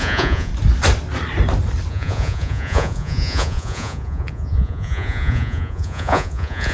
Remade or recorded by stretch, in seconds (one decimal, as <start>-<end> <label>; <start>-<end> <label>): 0.0-0.5 remade; 0.5-1.9 recorded; 1.9-6.7 remade